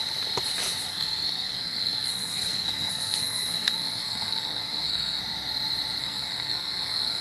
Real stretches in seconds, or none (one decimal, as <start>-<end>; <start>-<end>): 0.0-0.9; 5.2-6.0